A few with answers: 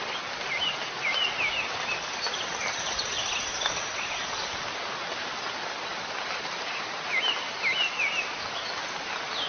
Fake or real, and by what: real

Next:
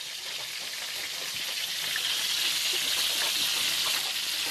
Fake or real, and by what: real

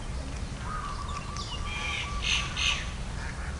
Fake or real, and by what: real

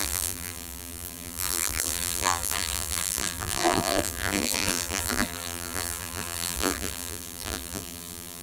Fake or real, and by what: fake, vocoder, BigVGAN v2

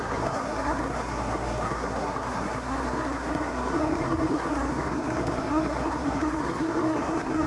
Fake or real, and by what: fake, codec, SNAC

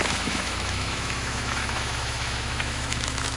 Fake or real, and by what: fake, autoencoder, DAC-VAE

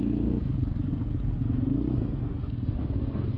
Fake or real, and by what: fake, codec, SNAC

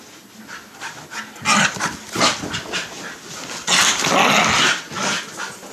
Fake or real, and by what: real